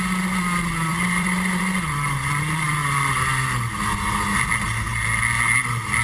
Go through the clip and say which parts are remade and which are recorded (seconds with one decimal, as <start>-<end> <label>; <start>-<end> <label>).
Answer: 0.0-0.9 recorded; 0.9-1.6 remade; 1.6-6.0 recorded